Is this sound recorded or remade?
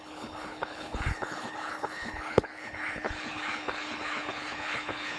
remade